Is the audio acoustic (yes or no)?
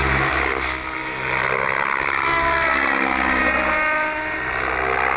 yes